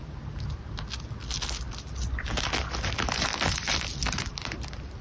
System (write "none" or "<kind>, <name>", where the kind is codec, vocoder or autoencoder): none